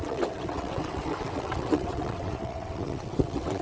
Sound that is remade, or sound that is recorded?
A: remade